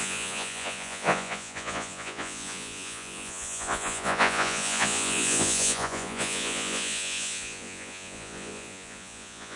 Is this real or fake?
fake